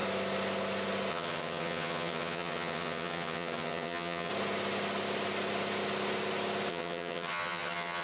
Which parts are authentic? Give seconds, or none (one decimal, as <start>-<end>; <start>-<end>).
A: 0.0-1.1; 4.3-6.7